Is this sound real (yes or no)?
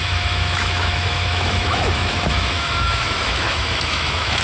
no